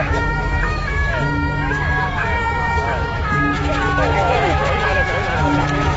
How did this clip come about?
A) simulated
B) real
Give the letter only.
A